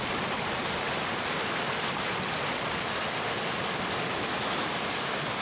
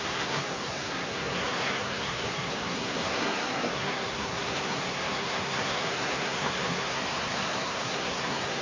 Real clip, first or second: first